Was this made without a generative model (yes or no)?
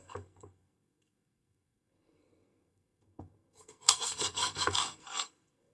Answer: no